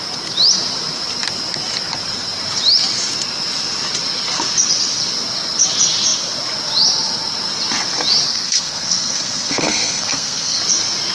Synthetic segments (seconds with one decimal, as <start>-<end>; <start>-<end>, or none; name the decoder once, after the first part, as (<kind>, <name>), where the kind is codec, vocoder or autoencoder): 8.3-10.6 (codec, SNAC)